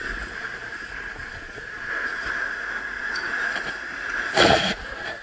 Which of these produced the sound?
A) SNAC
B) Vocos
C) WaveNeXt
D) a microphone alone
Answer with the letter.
B